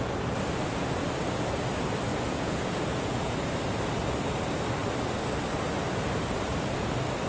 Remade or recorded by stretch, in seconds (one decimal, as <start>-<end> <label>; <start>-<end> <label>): 0.0-2.1 recorded; 2.1-3.3 remade; 3.3-7.3 recorded